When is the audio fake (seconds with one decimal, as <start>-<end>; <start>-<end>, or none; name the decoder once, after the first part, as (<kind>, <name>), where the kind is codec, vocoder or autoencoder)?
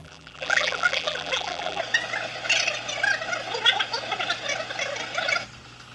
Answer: 0.0-1.8 (vocoder, BigVGAN v2)